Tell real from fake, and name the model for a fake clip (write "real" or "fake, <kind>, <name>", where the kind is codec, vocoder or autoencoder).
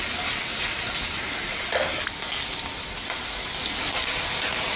real